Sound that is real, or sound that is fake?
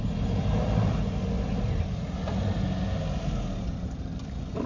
real